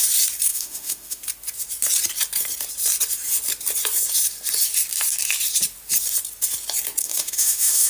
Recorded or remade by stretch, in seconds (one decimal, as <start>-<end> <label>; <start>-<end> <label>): 0.0-0.5 recorded; 0.5-1.2 remade; 1.2-7.0 recorded; 7.0-7.9 remade